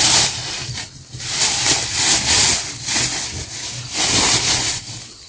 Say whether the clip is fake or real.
real